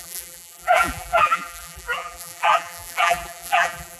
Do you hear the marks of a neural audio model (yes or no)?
yes